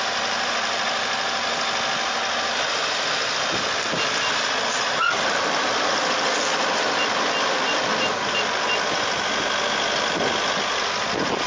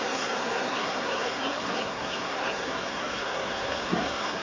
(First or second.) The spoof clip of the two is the second